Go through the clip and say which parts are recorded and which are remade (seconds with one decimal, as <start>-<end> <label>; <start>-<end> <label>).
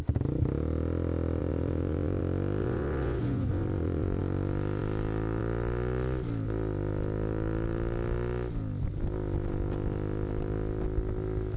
0.0-1.4 recorded; 1.4-2.2 remade; 2.2-2.6 recorded; 2.6-4.2 remade; 4.2-11.6 recorded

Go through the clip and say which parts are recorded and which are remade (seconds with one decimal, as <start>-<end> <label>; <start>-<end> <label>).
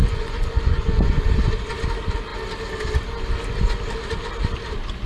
0.0-1.2 remade; 1.2-5.1 recorded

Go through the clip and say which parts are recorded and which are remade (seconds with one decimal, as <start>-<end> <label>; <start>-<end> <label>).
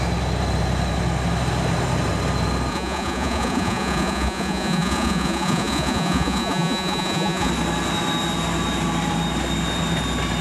0.0-2.7 recorded; 2.7-7.5 remade; 7.5-10.4 recorded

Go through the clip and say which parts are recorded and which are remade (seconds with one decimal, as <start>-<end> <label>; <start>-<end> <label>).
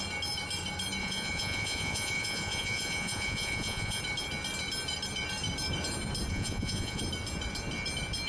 0.0-1.0 recorded; 1.0-4.0 remade; 4.0-6.3 recorded; 6.3-7.0 remade; 7.0-8.3 recorded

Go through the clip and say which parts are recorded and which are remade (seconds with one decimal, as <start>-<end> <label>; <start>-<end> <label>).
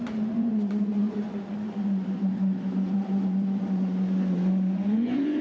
0.0-5.4 remade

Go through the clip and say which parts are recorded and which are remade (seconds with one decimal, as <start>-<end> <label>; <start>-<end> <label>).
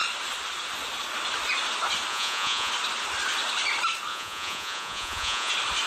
0.0-2.1 recorded; 2.1-2.7 remade; 2.7-4.1 recorded; 4.1-5.5 remade; 5.5-5.9 recorded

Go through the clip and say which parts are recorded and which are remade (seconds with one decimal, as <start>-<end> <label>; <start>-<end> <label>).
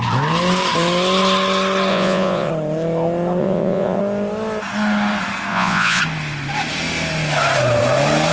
0.0-1.9 recorded; 1.9-2.5 remade; 2.5-3.4 recorded; 3.4-4.0 remade; 4.0-5.5 recorded; 5.5-6.0 remade; 6.0-8.3 recorded